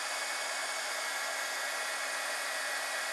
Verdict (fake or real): real